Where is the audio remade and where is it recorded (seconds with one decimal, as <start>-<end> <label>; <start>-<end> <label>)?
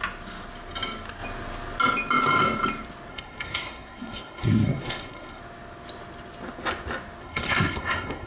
0.0-3.1 recorded; 3.1-5.4 remade; 5.4-7.2 recorded; 7.2-8.3 remade